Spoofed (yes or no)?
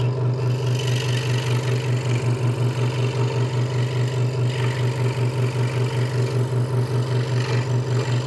no